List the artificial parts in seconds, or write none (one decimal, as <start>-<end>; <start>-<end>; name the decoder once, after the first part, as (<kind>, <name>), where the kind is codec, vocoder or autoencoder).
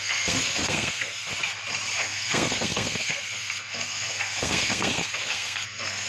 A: 0.0-1.3 (codec, SNAC); 2.0-6.1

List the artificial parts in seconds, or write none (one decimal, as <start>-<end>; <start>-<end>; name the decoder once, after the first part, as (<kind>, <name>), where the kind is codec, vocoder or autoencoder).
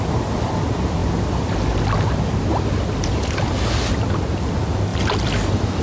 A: none